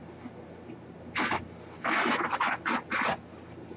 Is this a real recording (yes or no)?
yes